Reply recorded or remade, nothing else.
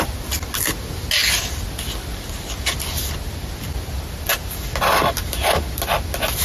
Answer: recorded